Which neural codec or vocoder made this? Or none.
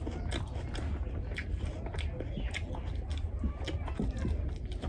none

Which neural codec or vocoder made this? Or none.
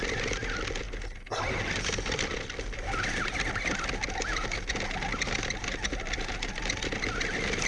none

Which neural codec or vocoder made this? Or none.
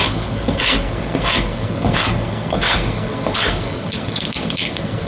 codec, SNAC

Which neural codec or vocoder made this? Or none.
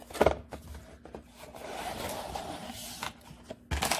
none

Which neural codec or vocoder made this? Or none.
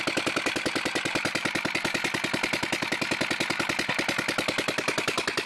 none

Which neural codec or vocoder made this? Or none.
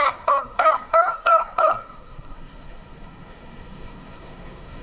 codec, SNAC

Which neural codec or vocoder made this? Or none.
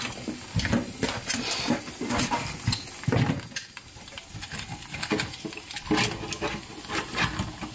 none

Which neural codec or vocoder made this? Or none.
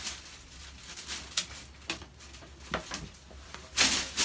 none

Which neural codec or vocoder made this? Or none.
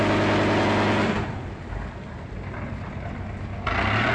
none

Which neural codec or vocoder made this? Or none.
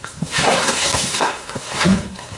codec, SNAC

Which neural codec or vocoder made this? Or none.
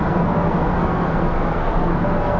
codec, SNAC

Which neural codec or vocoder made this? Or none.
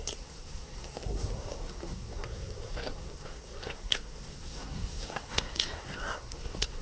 codec, SNAC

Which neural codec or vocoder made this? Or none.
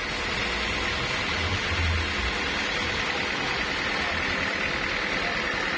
none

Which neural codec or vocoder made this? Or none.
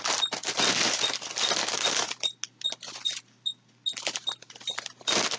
none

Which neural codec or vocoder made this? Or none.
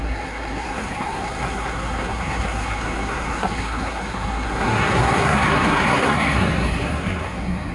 codec, SNAC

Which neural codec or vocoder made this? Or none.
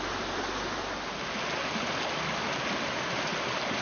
none